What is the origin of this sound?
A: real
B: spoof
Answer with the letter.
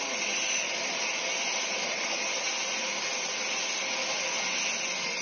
A